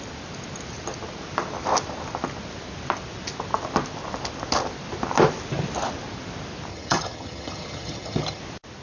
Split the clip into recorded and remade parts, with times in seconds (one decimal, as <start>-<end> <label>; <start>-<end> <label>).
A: 0.0-6.7 recorded; 6.7-8.4 remade; 8.4-8.8 recorded